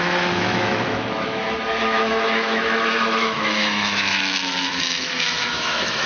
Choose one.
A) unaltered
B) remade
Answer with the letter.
B